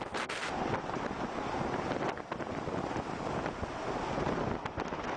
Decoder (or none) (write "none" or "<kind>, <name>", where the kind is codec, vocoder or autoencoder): none